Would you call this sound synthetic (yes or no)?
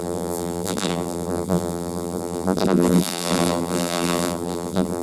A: yes